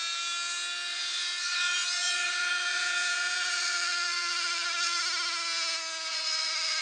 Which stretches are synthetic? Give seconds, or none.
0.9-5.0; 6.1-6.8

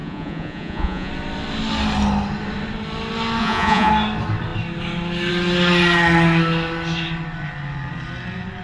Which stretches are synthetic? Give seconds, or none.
0.0-1.1; 3.4-3.9

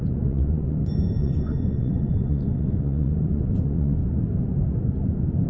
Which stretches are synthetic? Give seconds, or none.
0.0-4.0